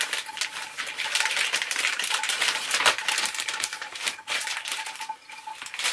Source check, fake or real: fake